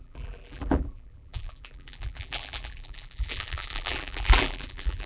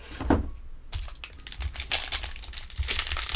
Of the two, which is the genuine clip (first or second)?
second